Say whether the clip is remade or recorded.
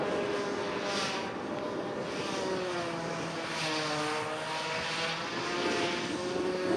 recorded